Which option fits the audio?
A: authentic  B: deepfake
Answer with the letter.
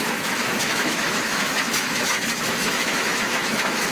B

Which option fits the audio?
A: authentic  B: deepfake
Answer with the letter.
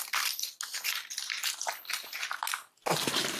A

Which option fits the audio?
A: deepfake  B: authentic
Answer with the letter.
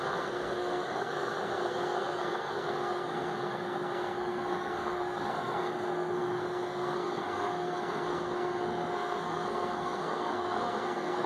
A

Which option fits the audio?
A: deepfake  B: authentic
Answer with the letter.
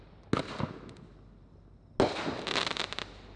B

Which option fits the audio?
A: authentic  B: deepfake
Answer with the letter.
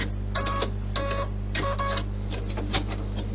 A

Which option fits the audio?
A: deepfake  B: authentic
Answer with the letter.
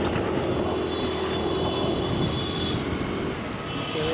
B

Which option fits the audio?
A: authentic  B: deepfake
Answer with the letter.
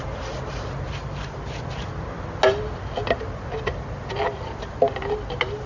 A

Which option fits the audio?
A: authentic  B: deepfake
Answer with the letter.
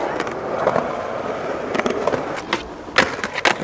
A